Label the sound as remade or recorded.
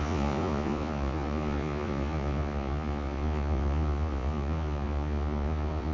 remade